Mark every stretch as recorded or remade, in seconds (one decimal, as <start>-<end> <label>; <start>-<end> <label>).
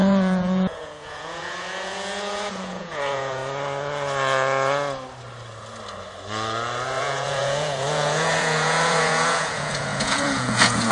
0.0-3.4 remade; 3.4-7.0 recorded; 7.0-10.9 remade